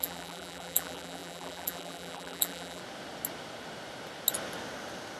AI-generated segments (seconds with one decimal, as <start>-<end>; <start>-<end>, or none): 0.0-2.8